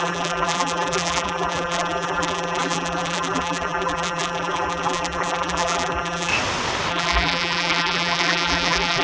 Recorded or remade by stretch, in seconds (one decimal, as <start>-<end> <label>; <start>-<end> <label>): 0.0-6.3 remade; 6.3-6.9 recorded; 6.9-9.0 remade